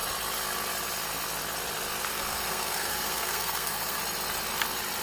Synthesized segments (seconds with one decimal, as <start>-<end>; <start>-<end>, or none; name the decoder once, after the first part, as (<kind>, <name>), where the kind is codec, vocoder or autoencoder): 2.1-4.0 (codec, SNAC)